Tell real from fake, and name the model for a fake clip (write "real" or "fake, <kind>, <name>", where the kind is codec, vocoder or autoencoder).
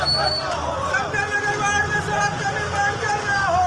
real